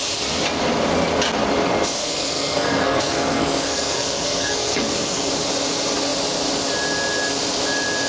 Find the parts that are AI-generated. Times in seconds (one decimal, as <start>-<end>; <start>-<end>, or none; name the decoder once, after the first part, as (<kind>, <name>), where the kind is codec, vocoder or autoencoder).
2.0-5.3 (codec, SNAC)